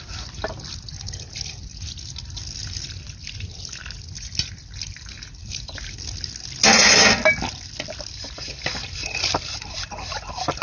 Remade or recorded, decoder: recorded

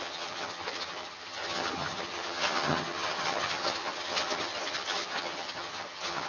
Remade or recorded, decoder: remade, vocoder, HiFi-GAN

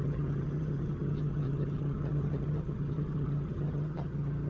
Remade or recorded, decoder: remade, vocoder, HiFi-GAN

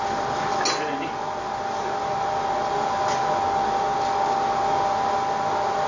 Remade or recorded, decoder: recorded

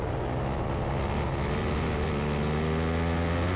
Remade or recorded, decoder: recorded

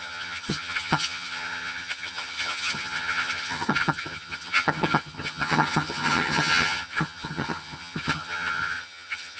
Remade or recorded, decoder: remade, vocoder, HiFi-GAN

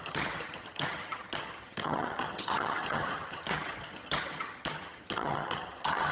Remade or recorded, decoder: remade, vocoder, HiFi-GAN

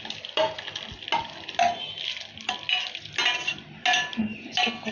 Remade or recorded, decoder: recorded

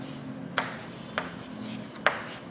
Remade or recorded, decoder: recorded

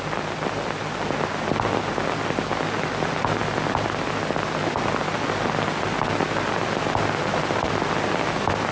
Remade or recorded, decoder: recorded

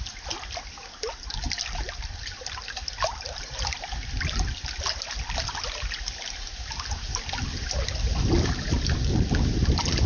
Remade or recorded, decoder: recorded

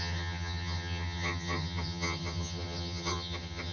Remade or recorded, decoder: remade, vocoder, HiFi-GAN